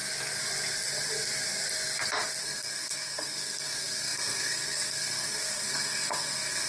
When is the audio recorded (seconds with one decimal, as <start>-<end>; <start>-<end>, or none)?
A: 0.0-2.4